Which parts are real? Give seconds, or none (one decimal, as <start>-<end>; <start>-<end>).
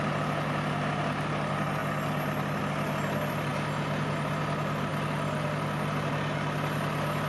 0.0-7.3